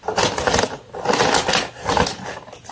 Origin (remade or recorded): recorded